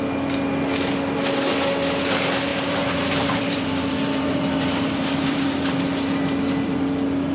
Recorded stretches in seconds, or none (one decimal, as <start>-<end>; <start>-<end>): 0.0-2.5; 5.8-7.3